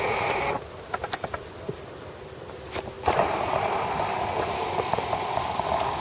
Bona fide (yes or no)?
no